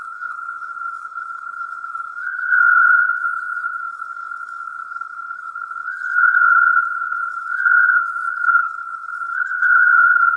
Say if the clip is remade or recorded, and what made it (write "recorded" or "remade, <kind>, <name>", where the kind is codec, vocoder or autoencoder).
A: remade, codec, HILCodec